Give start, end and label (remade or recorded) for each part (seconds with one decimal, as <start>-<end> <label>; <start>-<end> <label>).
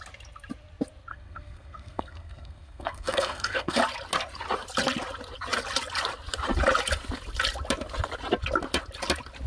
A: 0.0-1.1 recorded; 1.1-3.8 remade; 3.8-9.5 recorded